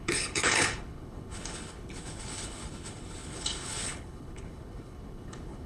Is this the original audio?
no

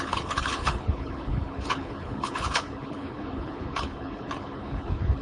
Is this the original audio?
no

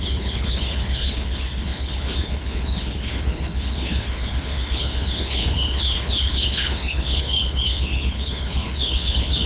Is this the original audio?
no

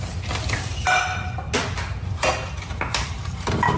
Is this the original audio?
yes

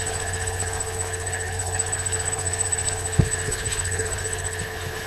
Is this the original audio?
no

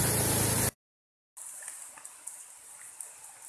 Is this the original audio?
yes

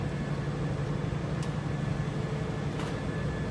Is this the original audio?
yes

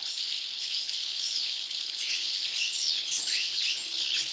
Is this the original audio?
no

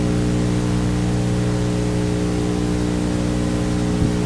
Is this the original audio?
yes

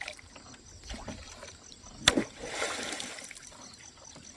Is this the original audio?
yes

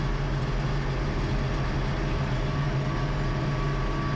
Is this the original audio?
yes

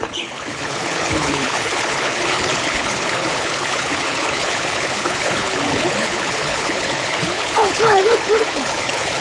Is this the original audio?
no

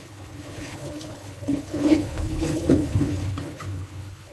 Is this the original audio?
no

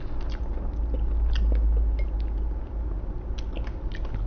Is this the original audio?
yes